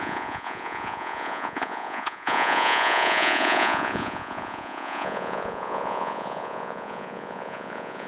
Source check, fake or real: fake